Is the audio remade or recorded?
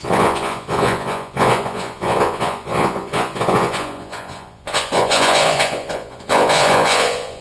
remade